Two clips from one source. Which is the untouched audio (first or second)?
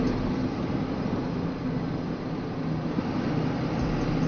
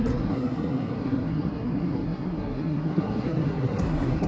first